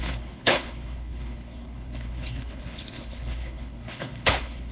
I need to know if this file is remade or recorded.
remade